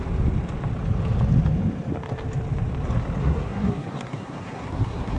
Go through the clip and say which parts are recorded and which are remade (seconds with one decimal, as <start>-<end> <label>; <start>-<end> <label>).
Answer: 0.0-3.2 recorded; 3.2-5.2 remade